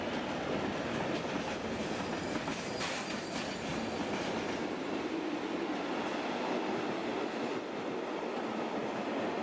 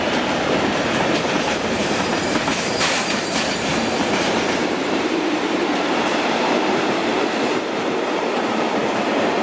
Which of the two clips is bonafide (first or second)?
first